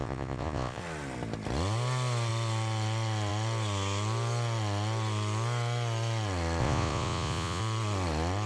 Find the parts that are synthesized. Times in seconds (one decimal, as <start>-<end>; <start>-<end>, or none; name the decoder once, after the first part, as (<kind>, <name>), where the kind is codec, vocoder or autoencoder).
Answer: 0.0-0.8 (vocoder, Vocos); 6.6-7.6